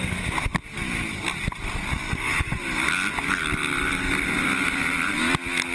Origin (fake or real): real